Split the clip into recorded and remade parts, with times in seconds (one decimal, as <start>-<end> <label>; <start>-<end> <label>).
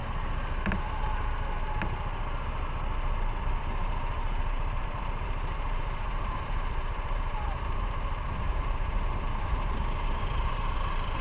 0.0-3.4 recorded; 3.4-11.2 remade